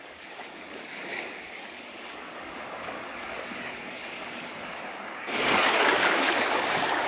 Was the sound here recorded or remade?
remade